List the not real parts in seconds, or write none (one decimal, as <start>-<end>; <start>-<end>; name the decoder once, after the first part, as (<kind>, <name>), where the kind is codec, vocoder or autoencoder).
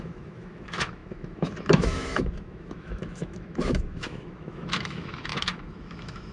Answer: 0.0-6.3 (autoencoder, DAC-VAE)